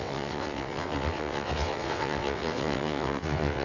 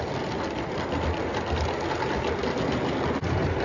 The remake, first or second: first